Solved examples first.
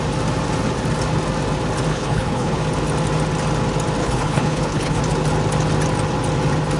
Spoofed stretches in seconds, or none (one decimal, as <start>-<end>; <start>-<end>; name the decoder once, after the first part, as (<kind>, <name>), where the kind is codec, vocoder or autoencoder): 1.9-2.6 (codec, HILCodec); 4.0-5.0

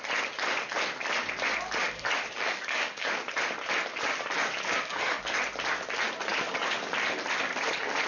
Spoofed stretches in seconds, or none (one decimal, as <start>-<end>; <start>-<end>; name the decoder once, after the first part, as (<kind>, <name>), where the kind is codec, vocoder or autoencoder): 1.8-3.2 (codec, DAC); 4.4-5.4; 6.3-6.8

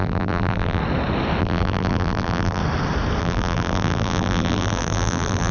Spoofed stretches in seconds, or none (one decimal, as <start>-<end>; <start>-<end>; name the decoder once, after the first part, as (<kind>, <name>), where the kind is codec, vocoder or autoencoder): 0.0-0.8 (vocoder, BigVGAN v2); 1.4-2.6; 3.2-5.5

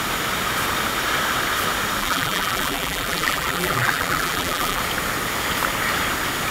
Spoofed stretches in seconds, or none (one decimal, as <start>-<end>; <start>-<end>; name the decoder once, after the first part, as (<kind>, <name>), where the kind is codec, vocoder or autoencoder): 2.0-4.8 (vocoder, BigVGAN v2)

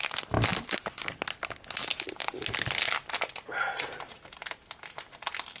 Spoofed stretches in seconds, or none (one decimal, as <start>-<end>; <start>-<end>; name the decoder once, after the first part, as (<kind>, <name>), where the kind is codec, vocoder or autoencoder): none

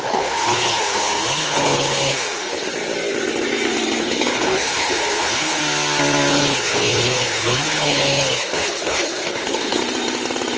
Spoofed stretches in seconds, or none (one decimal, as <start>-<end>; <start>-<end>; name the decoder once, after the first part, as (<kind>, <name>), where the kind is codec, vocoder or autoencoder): 0.0-2.7 (codec, HILCodec); 4.0-5.6; 6.3-9.8

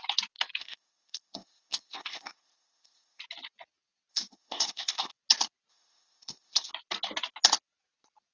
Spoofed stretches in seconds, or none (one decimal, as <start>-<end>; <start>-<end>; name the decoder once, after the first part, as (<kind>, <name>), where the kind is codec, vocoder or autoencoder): 0.6-3.2 (codec, ZipCodec); 4.1-5.1; 5.7-6.7